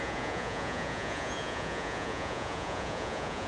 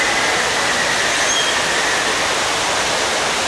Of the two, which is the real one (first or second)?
second